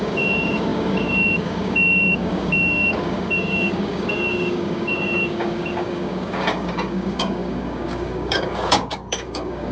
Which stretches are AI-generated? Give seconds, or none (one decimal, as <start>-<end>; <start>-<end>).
0.0-9.7

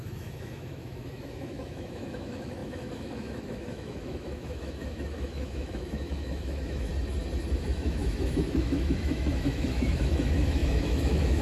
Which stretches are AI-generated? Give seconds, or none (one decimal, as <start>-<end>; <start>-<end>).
0.0-6.9; 7.5-11.4

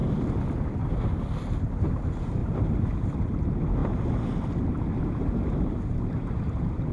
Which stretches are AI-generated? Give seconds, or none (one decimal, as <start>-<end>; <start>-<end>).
1.6-3.8; 5.0-6.9

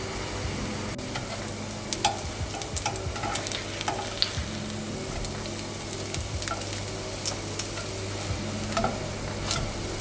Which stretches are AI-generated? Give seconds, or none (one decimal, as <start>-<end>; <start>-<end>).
4.4-5.2